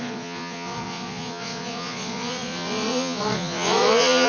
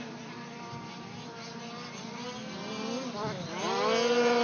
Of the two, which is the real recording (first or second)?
second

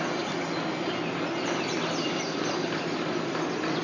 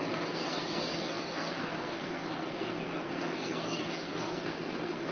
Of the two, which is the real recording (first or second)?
first